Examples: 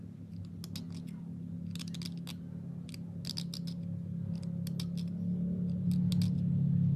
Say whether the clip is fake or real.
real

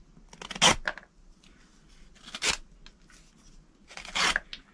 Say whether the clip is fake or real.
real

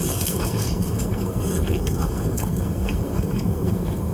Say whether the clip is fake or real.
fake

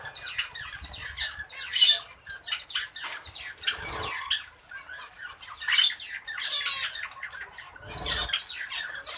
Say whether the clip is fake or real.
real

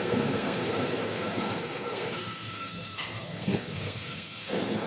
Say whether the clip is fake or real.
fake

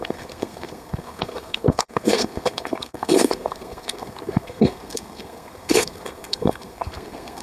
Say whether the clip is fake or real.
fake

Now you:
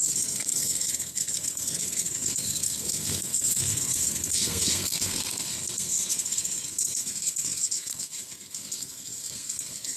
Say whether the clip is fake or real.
fake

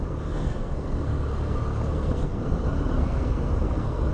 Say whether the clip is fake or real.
fake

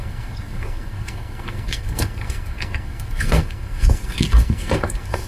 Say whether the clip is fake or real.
fake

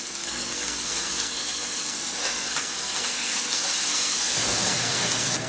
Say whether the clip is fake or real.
fake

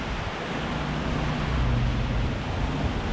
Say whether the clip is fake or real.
real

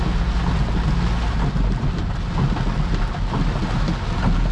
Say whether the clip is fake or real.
real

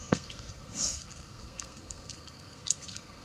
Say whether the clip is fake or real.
fake